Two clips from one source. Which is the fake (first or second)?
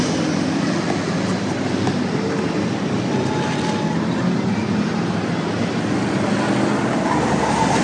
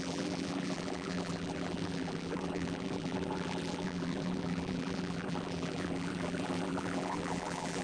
second